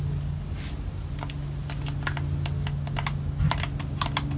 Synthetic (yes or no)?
no